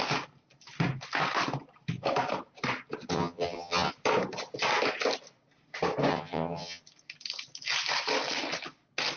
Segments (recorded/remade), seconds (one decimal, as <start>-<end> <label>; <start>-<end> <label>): 0.0-3.1 recorded; 3.1-3.9 remade; 3.9-6.1 recorded; 6.1-6.8 remade; 6.8-9.2 recorded